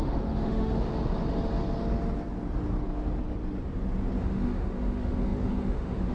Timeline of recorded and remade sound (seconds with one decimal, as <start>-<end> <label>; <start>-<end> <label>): 0.0-0.9 remade; 0.9-4.2 recorded; 4.2-6.1 remade